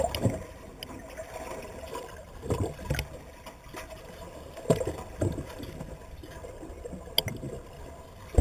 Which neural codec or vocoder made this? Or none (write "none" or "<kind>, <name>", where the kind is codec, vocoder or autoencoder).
none